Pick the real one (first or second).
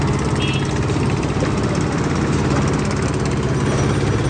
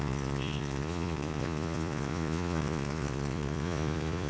first